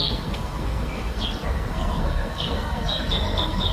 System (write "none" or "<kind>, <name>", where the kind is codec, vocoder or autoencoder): codec, SNAC